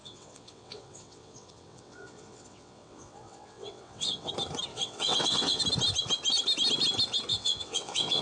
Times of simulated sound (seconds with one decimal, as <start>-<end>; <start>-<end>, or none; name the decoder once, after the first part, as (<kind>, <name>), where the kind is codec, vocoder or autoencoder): 0.0-4.3 (vocoder, WaveNeXt); 4.7-5.6; 7.3-8.2